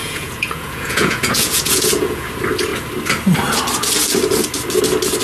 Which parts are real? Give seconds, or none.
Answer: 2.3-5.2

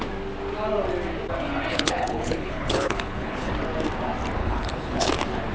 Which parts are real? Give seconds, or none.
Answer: 0.0-1.7; 3.5-4.4; 5.1-5.5